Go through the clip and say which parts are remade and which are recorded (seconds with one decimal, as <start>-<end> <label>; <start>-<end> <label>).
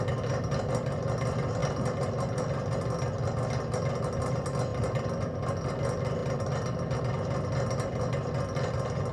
0.0-9.1 recorded